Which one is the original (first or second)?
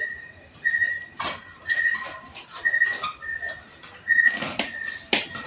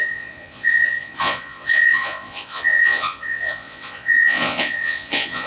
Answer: first